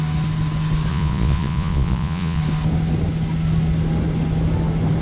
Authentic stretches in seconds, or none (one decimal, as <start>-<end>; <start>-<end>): 0.0-0.9; 2.4-5.0